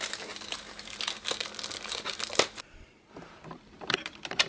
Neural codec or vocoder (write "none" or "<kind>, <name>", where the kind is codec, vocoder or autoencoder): none